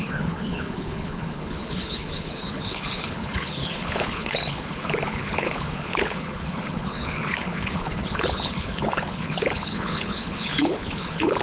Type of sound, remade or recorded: remade